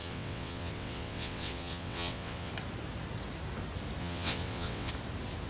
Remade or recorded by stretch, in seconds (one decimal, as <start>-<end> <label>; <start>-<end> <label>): 0.0-2.5 remade; 2.5-4.0 recorded; 4.0-4.9 remade; 4.9-5.5 recorded